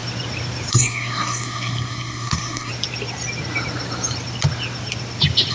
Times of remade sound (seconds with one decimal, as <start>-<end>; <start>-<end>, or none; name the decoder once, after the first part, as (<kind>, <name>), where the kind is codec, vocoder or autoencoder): 0.7-2.7 (codec, SNAC)